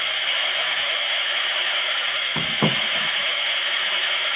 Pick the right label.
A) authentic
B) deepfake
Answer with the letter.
B